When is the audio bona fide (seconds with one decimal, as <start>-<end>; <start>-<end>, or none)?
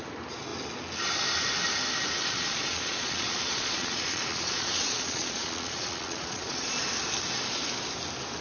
0.0-2.2; 6.8-8.4